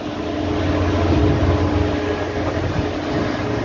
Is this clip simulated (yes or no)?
no